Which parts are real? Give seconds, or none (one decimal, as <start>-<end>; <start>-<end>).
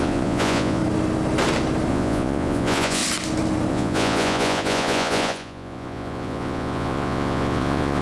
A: 0.8-1.9; 3.0-3.7